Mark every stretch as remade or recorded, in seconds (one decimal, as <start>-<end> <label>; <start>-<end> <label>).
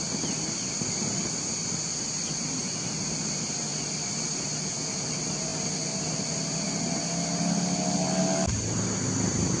0.0-9.6 recorded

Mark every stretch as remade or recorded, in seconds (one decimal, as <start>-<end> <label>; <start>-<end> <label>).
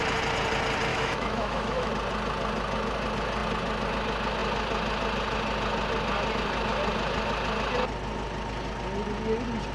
0.0-0.9 recorded; 0.9-1.9 remade; 1.9-9.7 recorded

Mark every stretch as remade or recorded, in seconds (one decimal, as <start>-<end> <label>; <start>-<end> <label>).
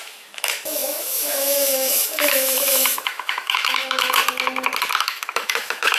0.0-4.2 remade; 4.2-5.0 recorded; 5.0-6.0 remade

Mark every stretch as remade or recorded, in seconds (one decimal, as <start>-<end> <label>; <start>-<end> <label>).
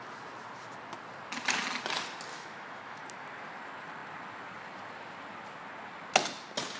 0.0-2.3 recorded; 2.3-3.0 remade; 3.0-6.8 recorded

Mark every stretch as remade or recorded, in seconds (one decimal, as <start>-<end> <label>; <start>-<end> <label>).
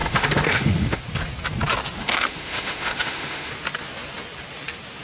0.0-1.0 remade; 1.0-2.0 recorded; 2.0-3.5 remade; 3.5-5.0 recorded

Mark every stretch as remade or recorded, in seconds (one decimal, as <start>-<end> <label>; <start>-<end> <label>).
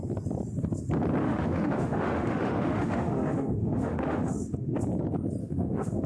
0.0-1.2 recorded; 1.2-4.8 remade; 4.8-5.4 recorded; 5.4-6.1 remade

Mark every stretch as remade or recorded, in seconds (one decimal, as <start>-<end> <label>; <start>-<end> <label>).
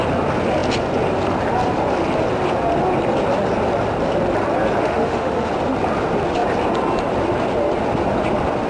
0.0-4.8 recorded; 4.8-5.5 remade; 5.5-8.7 recorded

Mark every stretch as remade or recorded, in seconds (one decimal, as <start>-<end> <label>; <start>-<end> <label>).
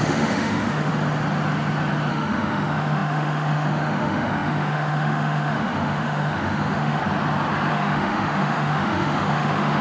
0.0-0.9 remade; 0.9-2.1 recorded; 2.1-7.0 remade; 7.0-7.7 recorded; 7.7-9.8 remade